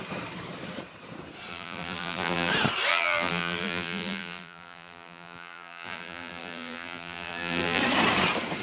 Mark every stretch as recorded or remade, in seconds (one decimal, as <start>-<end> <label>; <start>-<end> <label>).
0.0-1.5 recorded; 1.5-2.5 remade; 2.5-2.9 recorded; 2.9-7.8 remade; 7.8-8.6 recorded